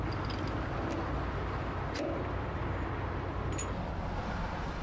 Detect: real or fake real